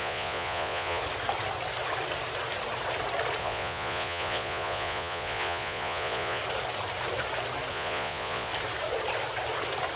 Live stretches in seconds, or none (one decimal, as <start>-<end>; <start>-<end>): 1.0-3.4; 6.4-7.7; 8.5-10.0